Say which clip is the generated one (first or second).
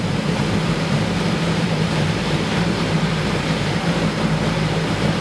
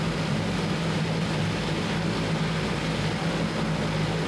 first